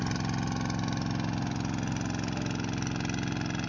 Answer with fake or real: real